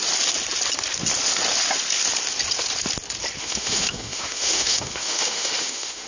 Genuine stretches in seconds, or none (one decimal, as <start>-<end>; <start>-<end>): 0.0-3.4

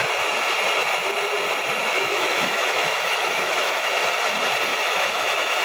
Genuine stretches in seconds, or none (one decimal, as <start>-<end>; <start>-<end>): 0.0-1.8; 3.9-4.7

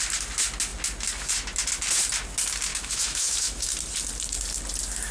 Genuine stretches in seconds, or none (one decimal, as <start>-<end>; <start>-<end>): 0.0-2.7; 3.6-5.1